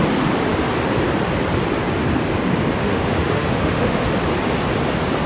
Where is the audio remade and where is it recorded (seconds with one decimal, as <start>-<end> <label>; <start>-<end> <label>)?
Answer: 0.0-2.8 recorded; 2.8-4.1 remade; 4.1-5.3 recorded